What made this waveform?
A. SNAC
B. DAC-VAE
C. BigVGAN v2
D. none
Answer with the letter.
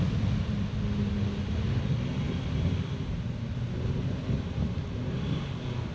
D